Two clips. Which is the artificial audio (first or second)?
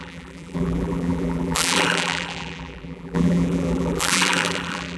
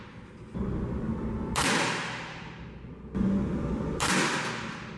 first